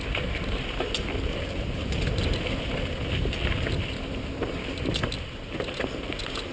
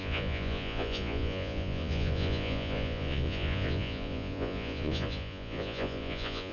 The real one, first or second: first